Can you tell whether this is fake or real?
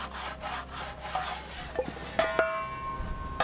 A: real